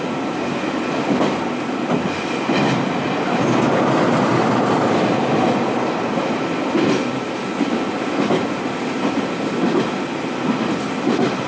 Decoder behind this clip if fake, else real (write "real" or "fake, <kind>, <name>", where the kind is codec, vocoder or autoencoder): real